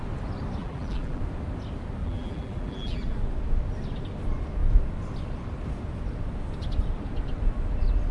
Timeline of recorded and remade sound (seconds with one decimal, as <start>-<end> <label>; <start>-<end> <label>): 0.0-0.6 recorded; 0.6-1.2 remade; 1.2-2.0 recorded; 2.0-3.2 remade; 3.2-8.1 recorded